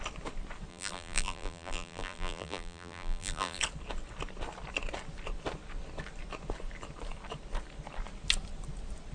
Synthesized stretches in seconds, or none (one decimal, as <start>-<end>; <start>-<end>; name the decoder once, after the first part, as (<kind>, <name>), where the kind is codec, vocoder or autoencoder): 0.7-3.6 (vocoder, BigVGAN v2)